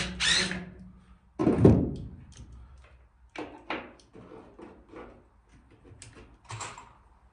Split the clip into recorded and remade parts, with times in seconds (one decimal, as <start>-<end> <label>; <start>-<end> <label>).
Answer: 0.0-7.3 recorded